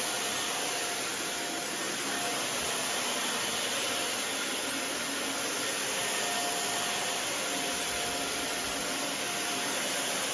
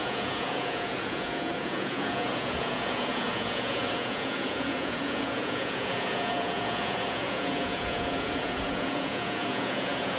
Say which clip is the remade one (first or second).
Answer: second